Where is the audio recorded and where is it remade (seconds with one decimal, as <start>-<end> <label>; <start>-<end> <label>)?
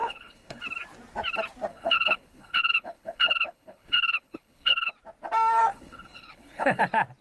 0.0-0.6 remade; 0.6-1.7 recorded; 1.7-4.9 remade; 4.9-5.7 recorded; 5.7-6.8 remade; 6.8-7.2 recorded